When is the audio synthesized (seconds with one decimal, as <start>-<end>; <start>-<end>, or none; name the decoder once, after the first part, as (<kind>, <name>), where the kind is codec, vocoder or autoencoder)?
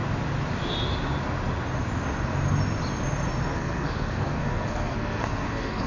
3.5-5.9 (codec, SNAC)